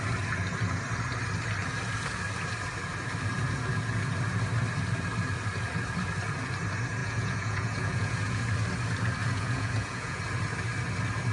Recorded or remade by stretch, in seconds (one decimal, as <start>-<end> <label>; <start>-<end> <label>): 0.0-7.0 recorded; 7.0-8.4 remade; 8.4-9.2 recorded; 9.2-10.2 remade; 10.2-11.3 recorded